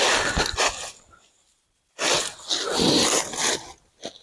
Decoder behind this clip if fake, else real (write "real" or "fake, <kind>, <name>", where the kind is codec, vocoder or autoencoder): real